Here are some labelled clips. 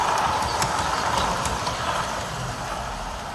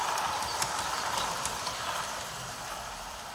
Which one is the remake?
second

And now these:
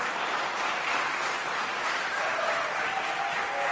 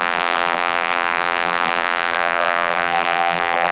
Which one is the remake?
second